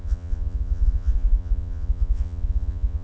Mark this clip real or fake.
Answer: fake